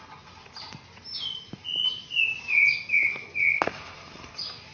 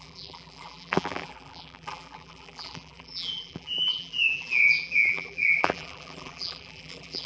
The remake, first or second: second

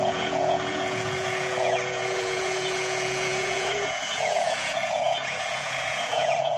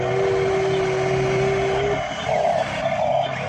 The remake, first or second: first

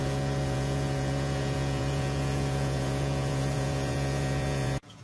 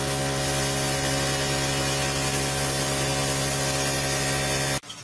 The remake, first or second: first